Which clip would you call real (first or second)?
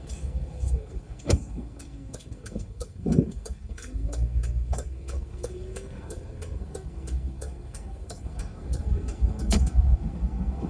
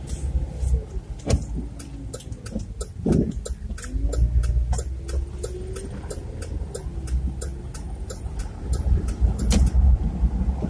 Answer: second